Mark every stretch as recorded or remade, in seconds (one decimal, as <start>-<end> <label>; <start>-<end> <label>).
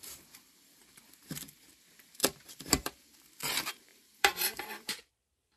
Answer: 0.0-0.8 remade; 0.8-2.4 recorded; 2.4-5.6 remade